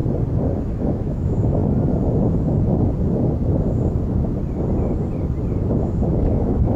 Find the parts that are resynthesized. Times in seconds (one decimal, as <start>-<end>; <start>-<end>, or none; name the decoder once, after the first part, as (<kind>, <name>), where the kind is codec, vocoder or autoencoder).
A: 0.6-1.6 (autoencoder, DAC-VAE); 5.7-6.8